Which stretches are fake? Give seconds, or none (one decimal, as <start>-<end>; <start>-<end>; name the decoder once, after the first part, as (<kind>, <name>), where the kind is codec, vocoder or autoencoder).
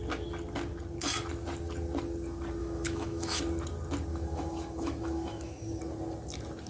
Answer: 2.6-3.4 (autoencoder, DAC-VAE); 4.1-5.8